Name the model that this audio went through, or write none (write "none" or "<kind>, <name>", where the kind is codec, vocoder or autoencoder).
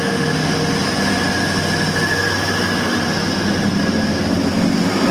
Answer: none